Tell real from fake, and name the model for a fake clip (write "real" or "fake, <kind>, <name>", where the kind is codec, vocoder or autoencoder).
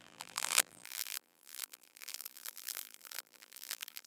fake, vocoder, BigVGAN v2